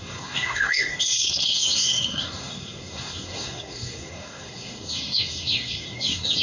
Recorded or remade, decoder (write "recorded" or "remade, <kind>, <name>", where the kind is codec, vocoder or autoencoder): remade, codec, SNAC